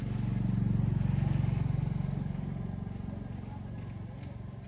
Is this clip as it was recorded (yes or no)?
yes